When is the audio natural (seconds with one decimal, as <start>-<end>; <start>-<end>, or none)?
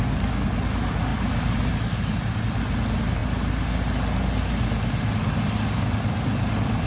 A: 0.0-6.9